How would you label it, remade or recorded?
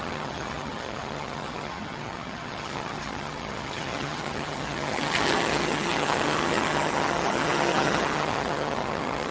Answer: remade